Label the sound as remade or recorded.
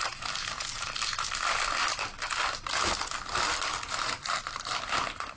remade